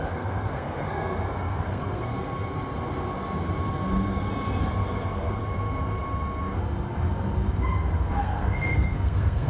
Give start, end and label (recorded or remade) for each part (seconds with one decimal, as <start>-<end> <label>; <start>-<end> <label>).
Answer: 0.0-2.1 remade; 2.1-4.6 recorded; 4.6-5.4 remade; 5.4-8.2 recorded; 8.2-9.5 remade